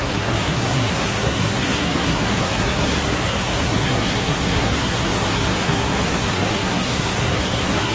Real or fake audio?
fake